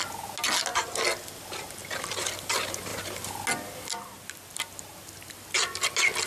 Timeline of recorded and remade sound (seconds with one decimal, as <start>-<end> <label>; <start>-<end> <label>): 0.0-6.3 recorded